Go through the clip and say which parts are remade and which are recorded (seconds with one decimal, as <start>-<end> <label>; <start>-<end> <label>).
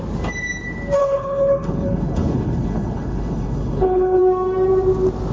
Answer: 0.0-1.0 recorded; 1.0-4.2 remade; 4.2-5.3 recorded